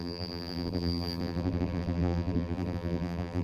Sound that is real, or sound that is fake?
fake